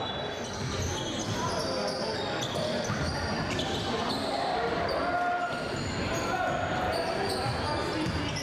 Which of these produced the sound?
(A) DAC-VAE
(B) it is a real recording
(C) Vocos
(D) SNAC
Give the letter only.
B